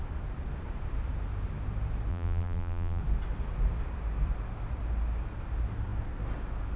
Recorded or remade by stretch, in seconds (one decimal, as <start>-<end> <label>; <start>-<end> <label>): 0.0-2.1 recorded; 2.1-3.0 remade; 3.0-6.8 recorded